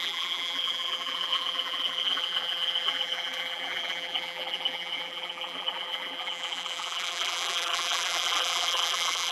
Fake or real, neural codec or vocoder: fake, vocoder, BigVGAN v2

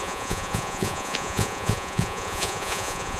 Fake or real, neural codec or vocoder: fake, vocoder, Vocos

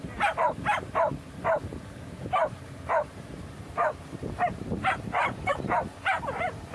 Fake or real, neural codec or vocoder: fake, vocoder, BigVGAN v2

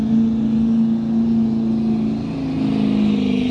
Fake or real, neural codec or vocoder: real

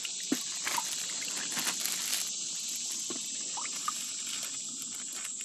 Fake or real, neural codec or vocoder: real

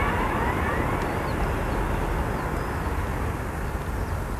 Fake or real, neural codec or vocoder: real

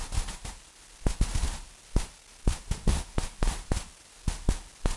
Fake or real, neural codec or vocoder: real